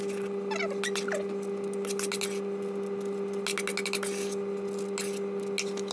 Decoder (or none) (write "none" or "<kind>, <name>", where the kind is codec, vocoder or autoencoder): none